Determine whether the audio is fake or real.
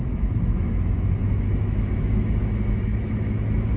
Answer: fake